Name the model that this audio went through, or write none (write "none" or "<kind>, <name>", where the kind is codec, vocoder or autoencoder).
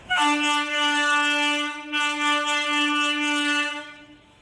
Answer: autoencoder, DAC-VAE